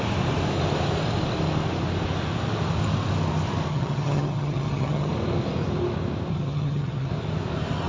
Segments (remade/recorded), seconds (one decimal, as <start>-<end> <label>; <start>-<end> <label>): 0.0-3.7 recorded; 3.7-5.1 remade; 5.1-6.3 recorded; 6.3-7.1 remade; 7.1-7.9 recorded